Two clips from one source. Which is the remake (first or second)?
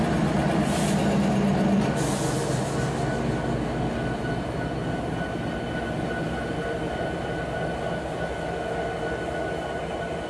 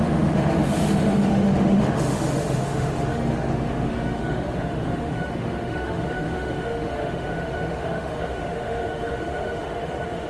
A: second